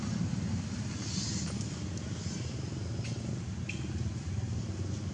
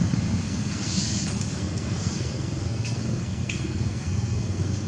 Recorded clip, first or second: first